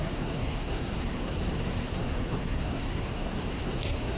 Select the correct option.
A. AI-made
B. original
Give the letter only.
A